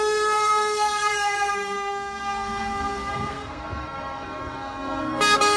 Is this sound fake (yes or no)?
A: yes